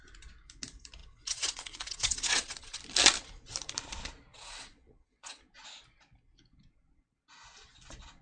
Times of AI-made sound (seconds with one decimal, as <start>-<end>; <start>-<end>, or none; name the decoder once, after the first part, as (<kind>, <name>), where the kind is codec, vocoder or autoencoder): 1.0-2.8 (vocoder, WaveNeXt); 4.3-5.4